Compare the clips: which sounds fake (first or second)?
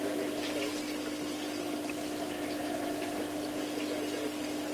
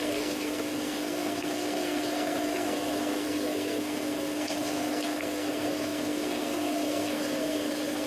second